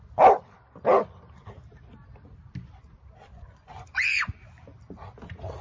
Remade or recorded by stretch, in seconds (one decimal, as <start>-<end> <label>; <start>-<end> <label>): 0.0-3.3 recorded; 3.3-4.4 remade; 4.4-5.6 recorded